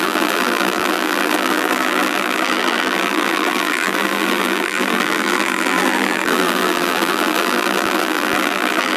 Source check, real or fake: fake